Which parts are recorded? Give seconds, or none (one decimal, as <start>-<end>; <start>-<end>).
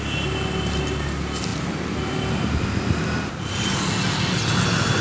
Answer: 0.0-5.0